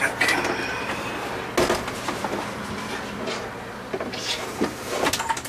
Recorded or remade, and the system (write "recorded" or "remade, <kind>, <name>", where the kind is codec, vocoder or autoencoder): recorded